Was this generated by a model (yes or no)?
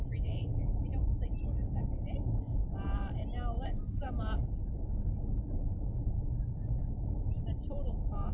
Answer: yes